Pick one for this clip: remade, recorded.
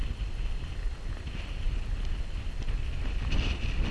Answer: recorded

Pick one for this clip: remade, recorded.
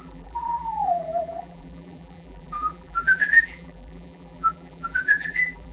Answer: remade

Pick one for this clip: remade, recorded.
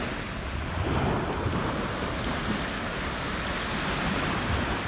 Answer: recorded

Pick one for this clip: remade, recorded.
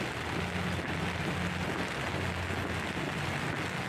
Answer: recorded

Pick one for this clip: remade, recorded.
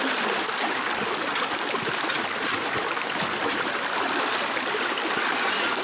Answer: remade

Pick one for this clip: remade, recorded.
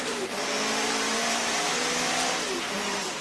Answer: remade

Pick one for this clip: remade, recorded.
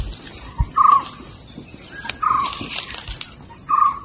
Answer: remade